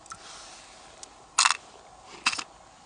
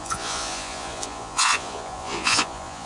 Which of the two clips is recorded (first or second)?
first